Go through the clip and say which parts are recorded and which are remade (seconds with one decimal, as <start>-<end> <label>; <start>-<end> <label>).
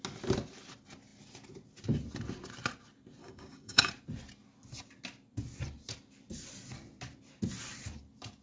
0.0-3.2 recorded; 3.2-3.9 remade; 3.9-8.4 recorded